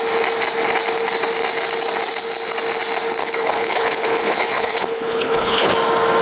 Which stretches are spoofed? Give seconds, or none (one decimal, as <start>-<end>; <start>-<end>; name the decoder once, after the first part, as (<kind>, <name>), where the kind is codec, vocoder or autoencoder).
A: 3.2-5.7 (codec, HILCodec)